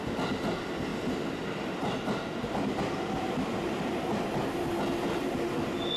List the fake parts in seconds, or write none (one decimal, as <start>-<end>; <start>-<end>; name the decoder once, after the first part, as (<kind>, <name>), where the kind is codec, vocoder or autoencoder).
0.9-4.5 (vocoder, BigVGAN v2)